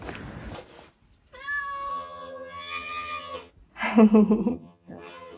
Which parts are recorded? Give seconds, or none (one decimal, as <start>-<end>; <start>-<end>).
0.0-1.9; 3.5-4.5